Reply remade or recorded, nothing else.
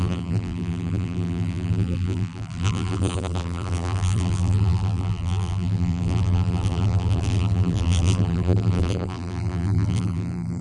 remade